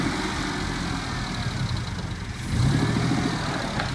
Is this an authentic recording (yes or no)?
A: yes